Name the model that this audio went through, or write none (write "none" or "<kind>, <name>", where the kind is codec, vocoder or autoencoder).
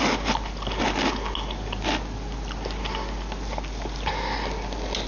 none